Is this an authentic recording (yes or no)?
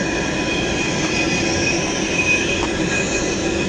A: yes